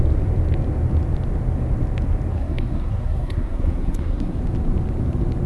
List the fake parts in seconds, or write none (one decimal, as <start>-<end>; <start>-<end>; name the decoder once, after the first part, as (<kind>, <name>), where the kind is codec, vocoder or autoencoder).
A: 2.3-4.4 (codec, SNAC)